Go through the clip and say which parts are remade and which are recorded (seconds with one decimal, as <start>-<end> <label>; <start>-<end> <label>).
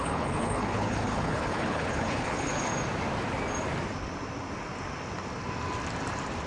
0.0-2.7 remade; 2.7-6.5 recorded